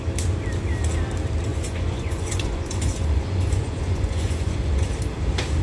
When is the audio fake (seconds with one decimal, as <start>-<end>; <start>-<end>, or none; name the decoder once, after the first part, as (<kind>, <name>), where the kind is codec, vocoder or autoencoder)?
1.5-4.9 (vocoder, Vocos)